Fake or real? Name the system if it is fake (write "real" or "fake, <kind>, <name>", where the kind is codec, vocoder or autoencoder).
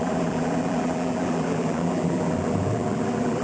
fake, vocoder, BigVGAN v2